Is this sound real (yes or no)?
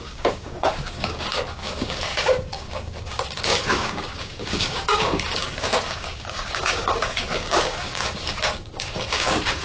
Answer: no